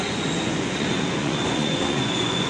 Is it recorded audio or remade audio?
remade